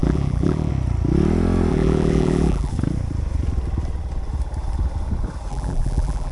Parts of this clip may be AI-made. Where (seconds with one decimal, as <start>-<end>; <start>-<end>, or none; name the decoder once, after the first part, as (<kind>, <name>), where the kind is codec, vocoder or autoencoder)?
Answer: 0.0-0.7 (vocoder, BigVGAN v2); 1.7-2.7; 5.5-6.3